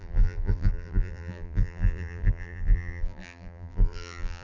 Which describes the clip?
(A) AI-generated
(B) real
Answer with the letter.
A